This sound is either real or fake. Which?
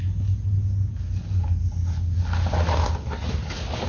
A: real